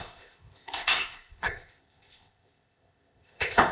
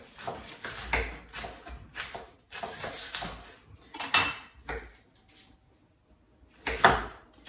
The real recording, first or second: second